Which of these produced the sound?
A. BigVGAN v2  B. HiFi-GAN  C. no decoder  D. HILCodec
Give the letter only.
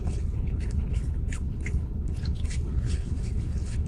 D